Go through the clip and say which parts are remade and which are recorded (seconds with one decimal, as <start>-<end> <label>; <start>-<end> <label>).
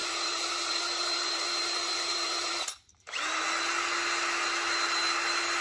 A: 0.0-3.4 remade; 3.4-5.6 recorded